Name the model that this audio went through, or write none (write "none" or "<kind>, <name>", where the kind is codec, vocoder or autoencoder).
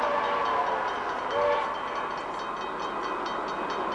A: none